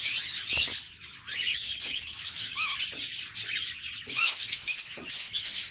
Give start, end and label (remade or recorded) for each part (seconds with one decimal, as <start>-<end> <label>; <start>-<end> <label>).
0.0-1.5 recorded; 1.5-2.8 remade; 2.8-4.0 recorded; 4.0-5.7 remade